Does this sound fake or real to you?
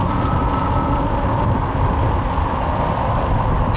real